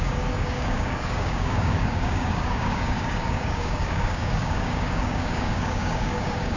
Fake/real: fake